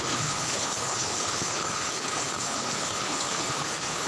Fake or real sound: fake